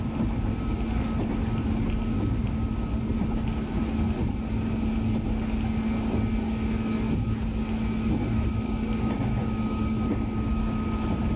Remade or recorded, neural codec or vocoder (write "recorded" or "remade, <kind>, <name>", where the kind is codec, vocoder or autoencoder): recorded